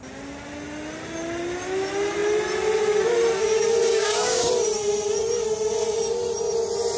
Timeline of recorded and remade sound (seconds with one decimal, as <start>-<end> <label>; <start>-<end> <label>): 0.0-3.9 recorded; 3.9-4.5 remade; 4.5-7.0 recorded